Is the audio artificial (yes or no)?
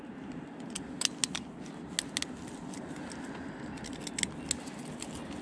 no